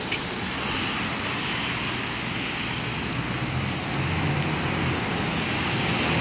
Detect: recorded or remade recorded